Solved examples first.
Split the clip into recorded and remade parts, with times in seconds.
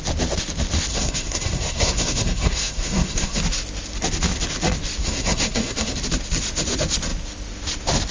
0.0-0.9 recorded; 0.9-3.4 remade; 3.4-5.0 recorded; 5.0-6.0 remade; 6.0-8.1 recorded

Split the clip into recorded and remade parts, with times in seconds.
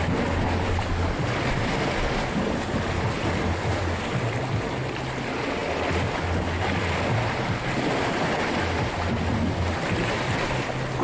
0.0-11.0 recorded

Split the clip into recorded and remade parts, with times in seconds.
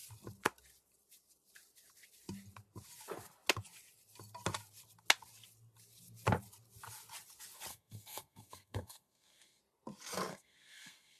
0.0-7.7 recorded; 7.7-9.6 remade; 9.6-10.3 recorded; 10.3-11.2 remade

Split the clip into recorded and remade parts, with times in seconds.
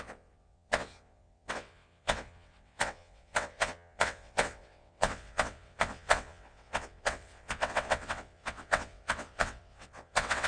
0.0-10.5 remade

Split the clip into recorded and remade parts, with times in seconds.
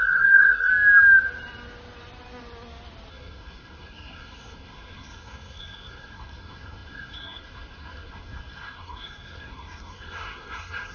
0.0-0.7 remade; 0.7-3.1 recorded; 3.1-10.9 remade